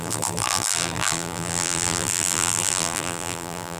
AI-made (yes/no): yes